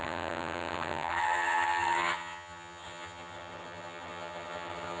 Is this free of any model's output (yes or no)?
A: no